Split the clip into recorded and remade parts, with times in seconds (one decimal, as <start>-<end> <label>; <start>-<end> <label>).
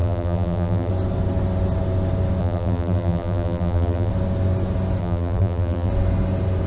0.0-0.9 remade; 0.9-2.4 recorded; 2.4-4.1 remade; 4.1-5.0 recorded; 5.0-5.9 remade; 5.9-6.7 recorded